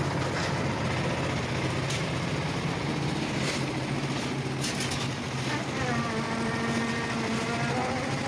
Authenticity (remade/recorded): recorded